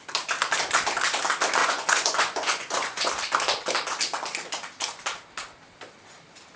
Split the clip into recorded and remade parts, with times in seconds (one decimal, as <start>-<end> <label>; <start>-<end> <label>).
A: 0.0-1.6 recorded; 1.6-3.1 remade; 3.1-6.6 recorded